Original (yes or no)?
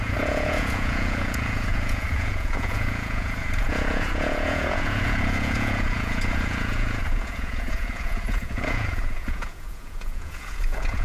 no